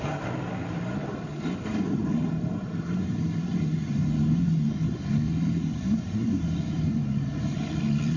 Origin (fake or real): real